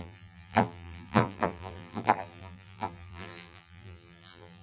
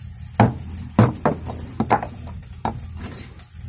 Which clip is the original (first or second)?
second